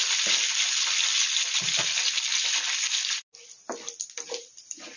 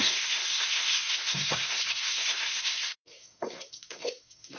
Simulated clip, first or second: second